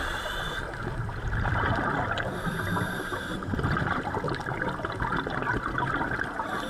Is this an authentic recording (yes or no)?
no